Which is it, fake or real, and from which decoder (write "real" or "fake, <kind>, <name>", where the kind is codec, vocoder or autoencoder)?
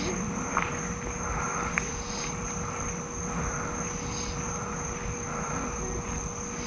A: real